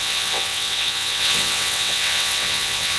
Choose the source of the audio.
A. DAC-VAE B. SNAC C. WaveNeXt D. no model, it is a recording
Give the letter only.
C